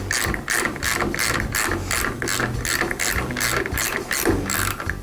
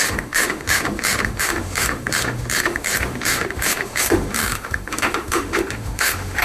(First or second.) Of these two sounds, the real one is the first